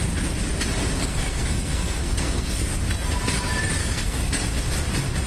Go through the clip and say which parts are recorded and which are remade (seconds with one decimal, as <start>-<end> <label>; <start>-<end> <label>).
0.0-1.0 recorded; 1.0-2.7 remade; 2.7-3.8 recorded; 3.8-4.4 remade; 4.4-5.3 recorded